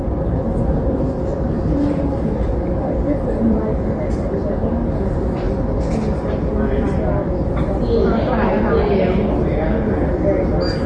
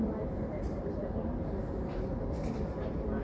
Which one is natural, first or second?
first